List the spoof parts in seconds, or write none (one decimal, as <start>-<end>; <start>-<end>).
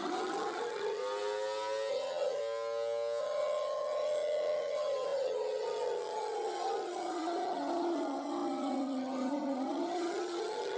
0.0-1.0; 1.9-2.4; 3.2-10.8